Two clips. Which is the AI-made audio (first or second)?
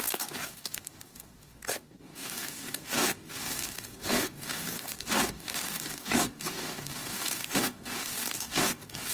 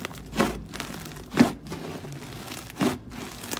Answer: first